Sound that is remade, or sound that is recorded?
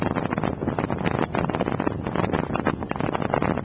recorded